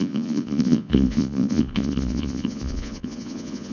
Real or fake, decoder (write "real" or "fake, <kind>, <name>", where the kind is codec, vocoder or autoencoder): fake, vocoder, Vocos